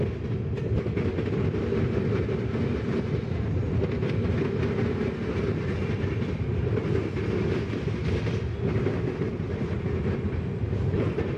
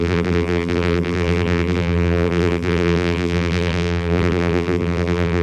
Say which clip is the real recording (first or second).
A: first